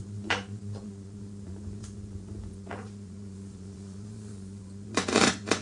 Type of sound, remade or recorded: remade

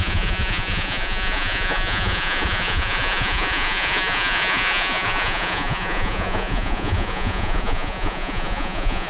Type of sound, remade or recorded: remade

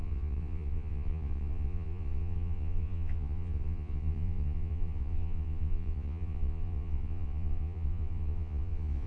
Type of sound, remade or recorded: remade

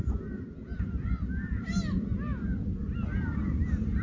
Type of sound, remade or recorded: recorded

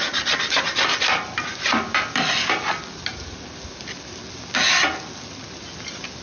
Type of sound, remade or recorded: recorded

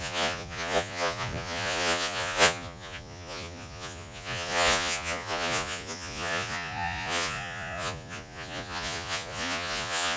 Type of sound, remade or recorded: remade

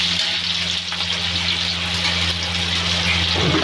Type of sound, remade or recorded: recorded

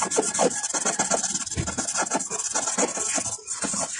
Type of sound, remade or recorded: recorded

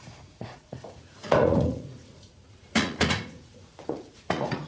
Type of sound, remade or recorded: remade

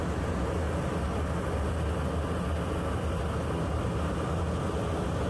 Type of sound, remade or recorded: recorded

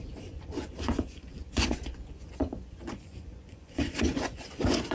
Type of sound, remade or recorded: remade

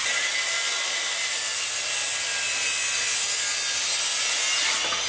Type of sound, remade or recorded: recorded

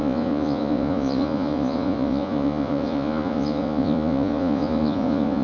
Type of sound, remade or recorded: remade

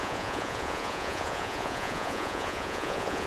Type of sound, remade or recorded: remade